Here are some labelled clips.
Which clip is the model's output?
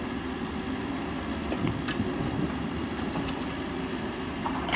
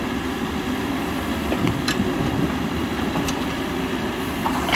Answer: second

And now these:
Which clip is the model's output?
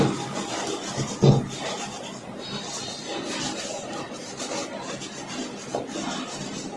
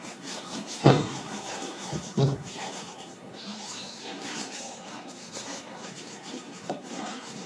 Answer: second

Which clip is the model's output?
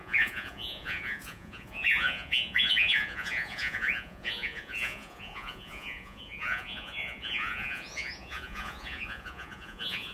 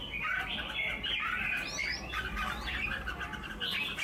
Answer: first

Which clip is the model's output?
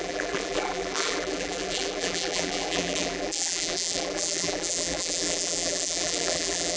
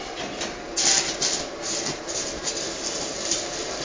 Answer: first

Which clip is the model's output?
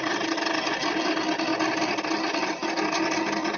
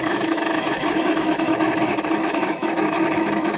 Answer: second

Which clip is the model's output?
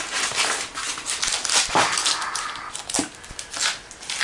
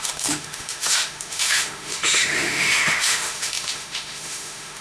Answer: second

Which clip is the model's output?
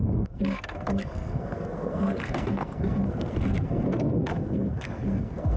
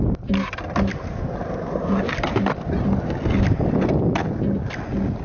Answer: first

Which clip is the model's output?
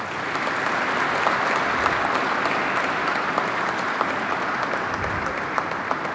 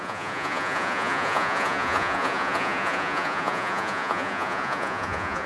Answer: second